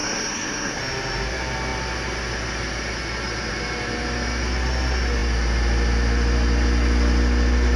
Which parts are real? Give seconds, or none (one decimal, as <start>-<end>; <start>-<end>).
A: 0.8-7.8